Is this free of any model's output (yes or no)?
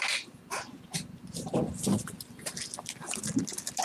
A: yes